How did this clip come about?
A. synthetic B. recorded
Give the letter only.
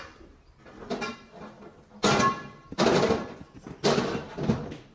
B